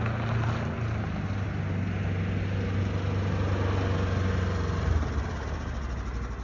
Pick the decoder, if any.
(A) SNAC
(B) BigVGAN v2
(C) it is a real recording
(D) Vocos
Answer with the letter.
C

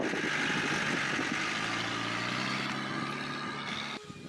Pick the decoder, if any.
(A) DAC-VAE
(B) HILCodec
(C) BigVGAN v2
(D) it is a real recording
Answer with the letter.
D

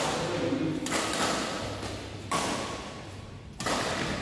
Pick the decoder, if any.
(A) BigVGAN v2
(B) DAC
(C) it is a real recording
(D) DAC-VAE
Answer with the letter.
C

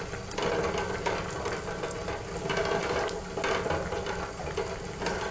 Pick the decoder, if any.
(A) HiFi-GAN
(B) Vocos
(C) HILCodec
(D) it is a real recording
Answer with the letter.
D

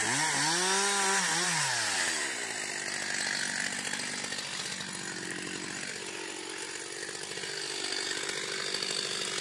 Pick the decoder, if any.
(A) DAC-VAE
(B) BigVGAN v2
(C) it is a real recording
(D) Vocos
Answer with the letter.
C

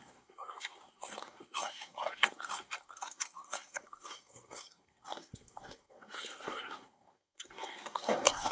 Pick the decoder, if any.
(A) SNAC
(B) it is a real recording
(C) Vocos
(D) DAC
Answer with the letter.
A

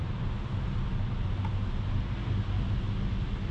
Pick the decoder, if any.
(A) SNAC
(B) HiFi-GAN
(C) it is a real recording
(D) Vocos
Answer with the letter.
C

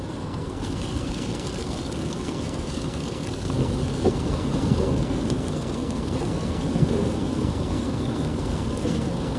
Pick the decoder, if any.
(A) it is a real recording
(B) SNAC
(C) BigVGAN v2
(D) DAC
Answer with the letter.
B